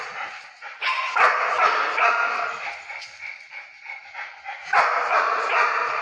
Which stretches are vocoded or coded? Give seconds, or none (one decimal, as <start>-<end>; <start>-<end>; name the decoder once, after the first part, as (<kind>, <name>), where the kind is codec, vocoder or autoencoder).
0.0-0.6 (vocoder, BigVGAN v2); 2.9-4.0; 5.0-6.0